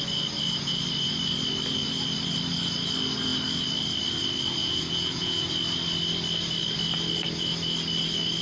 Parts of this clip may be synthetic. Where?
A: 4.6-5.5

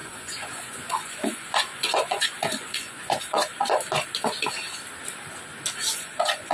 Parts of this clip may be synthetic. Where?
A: 0.0-3.5; 5.9-6.5

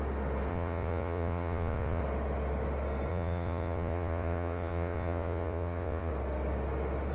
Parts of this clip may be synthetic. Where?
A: 0.5-2.0; 3.1-6.1

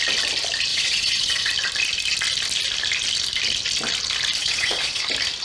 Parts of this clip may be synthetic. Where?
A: 0.7-1.5; 4.4-5.0